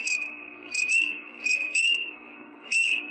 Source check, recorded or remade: remade